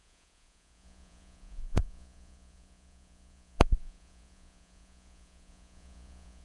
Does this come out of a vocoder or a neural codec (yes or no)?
yes